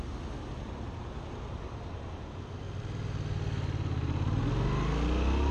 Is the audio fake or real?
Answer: real